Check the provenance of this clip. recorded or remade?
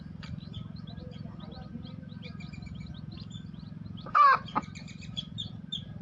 remade